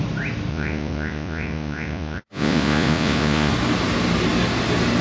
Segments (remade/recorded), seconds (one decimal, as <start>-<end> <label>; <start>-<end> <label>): 0.0-0.5 recorded; 0.5-3.5 remade; 3.5-5.0 recorded